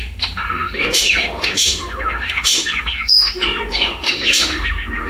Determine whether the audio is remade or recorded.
remade